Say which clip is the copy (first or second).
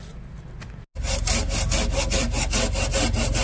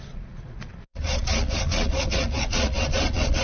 second